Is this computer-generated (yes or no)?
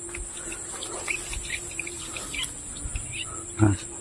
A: no